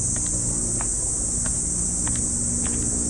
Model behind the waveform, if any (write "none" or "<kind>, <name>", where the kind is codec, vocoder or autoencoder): none